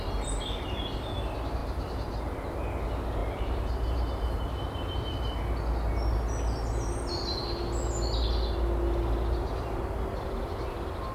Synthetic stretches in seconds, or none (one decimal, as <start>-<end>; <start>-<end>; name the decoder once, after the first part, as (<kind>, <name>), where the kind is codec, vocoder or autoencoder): 3.2-5.4 (vocoder, BigVGAN v2)

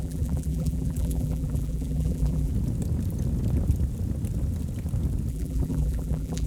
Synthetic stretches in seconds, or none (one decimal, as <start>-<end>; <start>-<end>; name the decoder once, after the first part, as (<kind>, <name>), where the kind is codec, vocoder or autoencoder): 0.0-2.5 (vocoder, BigVGAN v2); 5.3-6.5

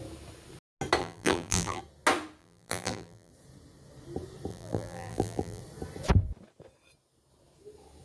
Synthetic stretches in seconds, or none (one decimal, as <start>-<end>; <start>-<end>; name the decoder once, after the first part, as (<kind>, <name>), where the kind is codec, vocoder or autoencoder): 1.0-1.8 (vocoder, BigVGAN v2); 2.4-3.3; 4.5-5.6

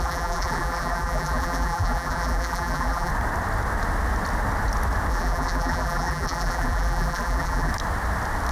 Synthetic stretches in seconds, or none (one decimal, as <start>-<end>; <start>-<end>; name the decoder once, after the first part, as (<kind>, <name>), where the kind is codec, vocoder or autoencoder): 0.0-3.1 (vocoder, BigVGAN v2); 5.1-7.7

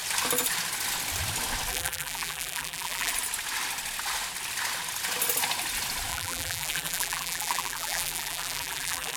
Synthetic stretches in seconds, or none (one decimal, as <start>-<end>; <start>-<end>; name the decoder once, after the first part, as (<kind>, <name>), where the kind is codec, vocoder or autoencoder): 1.7-3.1 (vocoder, BigVGAN v2); 6.1-9.2

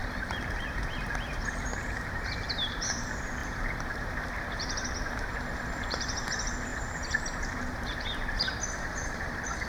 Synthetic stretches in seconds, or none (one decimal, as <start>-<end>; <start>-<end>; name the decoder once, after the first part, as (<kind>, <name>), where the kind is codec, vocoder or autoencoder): 0.0-9.7 (vocoder, BigVGAN v2)

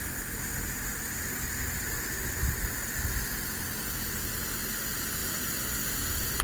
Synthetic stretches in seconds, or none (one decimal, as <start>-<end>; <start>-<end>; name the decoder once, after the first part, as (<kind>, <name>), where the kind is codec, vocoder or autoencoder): none

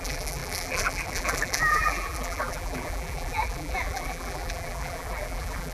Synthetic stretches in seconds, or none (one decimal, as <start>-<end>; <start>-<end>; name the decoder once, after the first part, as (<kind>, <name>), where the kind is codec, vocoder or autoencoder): 0.0-5.7 (vocoder, BigVGAN v2)